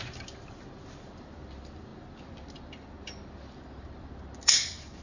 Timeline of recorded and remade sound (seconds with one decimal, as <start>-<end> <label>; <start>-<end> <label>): 0.0-5.0 recorded